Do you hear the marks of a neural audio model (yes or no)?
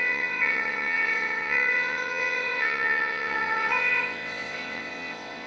yes